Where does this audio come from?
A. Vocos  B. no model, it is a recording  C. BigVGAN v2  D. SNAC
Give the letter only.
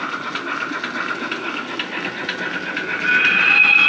B